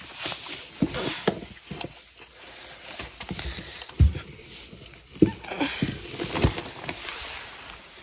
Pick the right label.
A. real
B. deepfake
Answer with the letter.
A